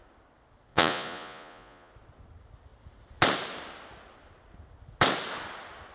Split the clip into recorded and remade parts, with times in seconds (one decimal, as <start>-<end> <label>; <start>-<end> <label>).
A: 0.0-0.7 recorded; 0.7-1.9 remade; 1.9-5.9 recorded